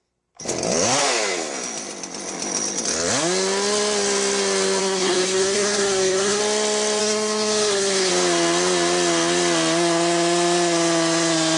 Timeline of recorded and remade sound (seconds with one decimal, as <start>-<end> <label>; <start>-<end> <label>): 0.0-4.8 recorded; 4.8-6.4 remade; 6.4-7.0 recorded; 7.0-8.1 remade; 8.1-11.6 recorded